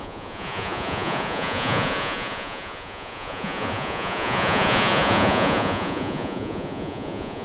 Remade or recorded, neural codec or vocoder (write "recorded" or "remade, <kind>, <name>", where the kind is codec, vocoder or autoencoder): remade, vocoder, Vocos